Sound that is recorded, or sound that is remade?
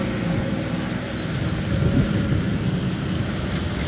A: recorded